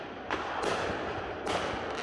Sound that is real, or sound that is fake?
real